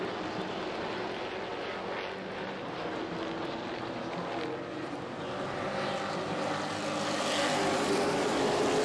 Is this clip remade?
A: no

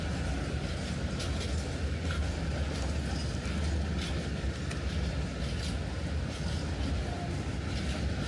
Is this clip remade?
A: no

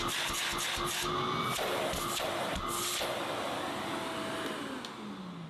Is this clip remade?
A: no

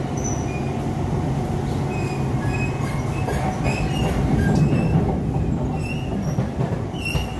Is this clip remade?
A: no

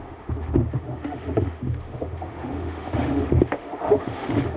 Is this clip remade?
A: yes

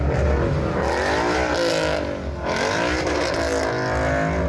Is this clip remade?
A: no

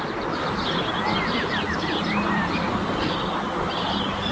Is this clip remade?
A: no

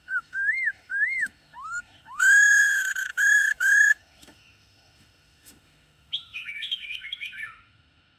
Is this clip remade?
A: yes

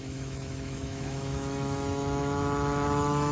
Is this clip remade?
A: yes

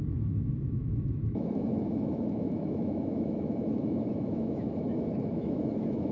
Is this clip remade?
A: yes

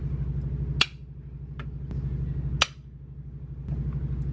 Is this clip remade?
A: no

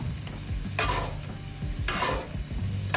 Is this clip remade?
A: no